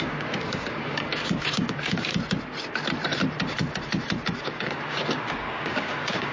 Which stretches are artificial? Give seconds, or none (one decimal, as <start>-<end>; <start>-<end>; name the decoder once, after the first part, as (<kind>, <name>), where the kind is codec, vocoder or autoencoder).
0.0-2.1 (codec, DAC); 4.4-6.3